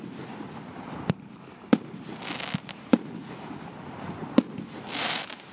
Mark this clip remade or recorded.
recorded